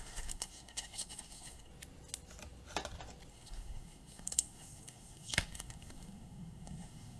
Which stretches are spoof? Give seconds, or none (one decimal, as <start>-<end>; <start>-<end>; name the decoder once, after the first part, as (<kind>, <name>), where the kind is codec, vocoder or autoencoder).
0.0-1.7 (codec, SNAC); 3.3-7.2